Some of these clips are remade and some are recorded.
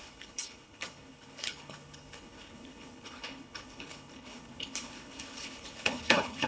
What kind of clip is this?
remade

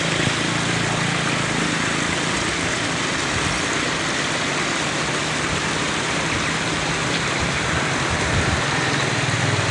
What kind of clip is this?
recorded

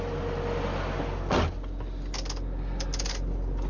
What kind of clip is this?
recorded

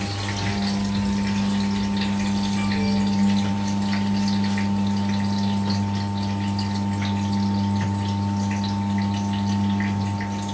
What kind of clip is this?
recorded